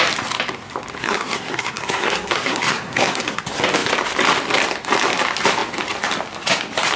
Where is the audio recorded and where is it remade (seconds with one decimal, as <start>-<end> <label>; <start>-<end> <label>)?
0.0-1.0 recorded; 1.0-3.4 remade; 3.4-7.0 recorded